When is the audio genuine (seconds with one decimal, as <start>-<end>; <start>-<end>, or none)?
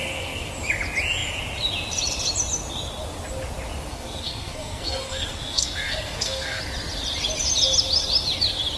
0.5-3.9; 6.6-8.8